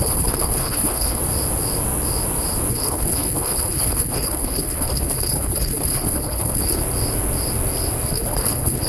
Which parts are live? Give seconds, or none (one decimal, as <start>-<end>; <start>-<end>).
1.2-2.7; 6.8-8.1